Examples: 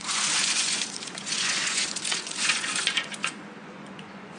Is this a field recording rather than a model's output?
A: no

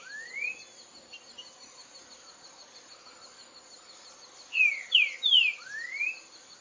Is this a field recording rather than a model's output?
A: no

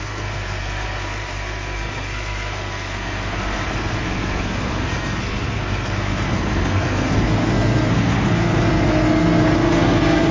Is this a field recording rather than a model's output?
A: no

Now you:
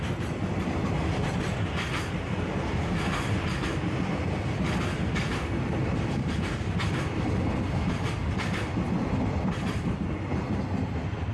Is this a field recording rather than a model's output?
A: yes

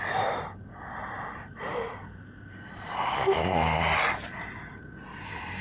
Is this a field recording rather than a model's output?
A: yes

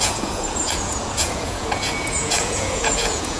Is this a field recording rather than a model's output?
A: no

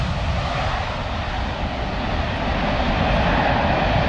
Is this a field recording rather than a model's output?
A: yes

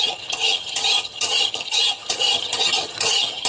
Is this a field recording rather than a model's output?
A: no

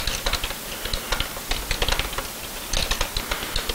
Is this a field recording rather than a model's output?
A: yes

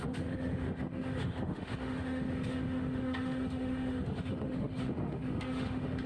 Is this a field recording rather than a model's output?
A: no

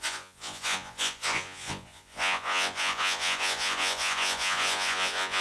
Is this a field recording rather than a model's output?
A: no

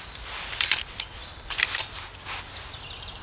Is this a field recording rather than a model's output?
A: no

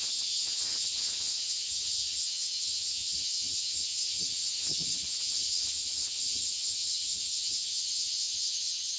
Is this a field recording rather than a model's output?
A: no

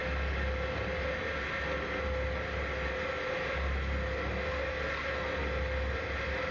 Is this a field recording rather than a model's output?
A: yes